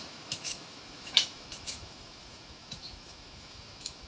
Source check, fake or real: fake